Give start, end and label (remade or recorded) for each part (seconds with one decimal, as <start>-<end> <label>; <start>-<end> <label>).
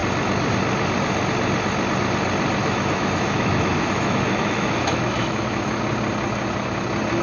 0.0-2.6 recorded; 2.6-5.8 remade; 5.8-7.2 recorded